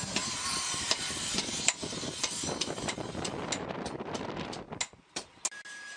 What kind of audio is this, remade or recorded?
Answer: recorded